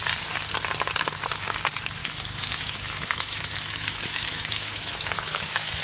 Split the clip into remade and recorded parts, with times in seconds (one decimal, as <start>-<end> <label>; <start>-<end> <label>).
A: 0.0-2.0 recorded; 2.0-5.8 remade